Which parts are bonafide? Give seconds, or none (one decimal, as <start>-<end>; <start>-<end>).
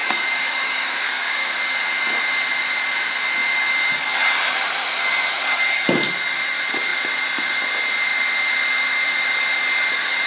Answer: 1.6-10.3